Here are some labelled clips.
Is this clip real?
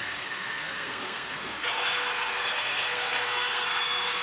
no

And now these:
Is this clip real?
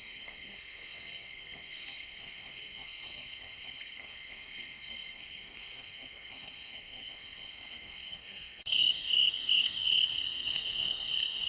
no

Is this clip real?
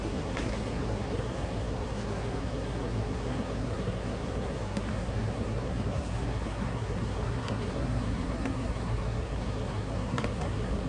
no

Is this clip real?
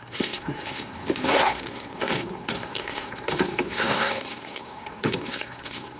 no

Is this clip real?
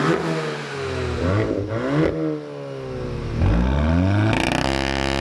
yes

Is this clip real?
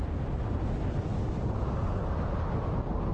yes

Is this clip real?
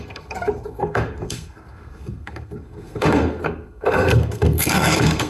no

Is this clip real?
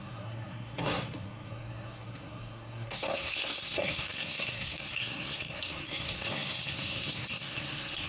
no